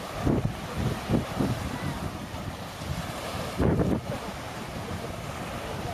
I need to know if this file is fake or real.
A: fake